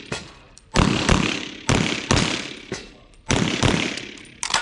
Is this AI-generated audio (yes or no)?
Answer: yes